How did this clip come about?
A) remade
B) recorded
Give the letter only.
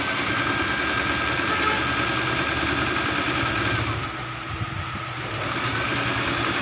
B